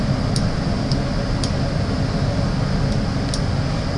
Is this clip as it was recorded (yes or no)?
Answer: yes